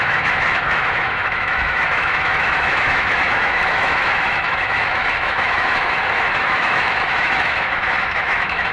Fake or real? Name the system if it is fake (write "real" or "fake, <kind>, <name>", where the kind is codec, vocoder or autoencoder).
fake, autoencoder, DAC-VAE